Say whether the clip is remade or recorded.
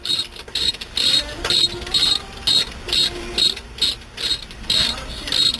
recorded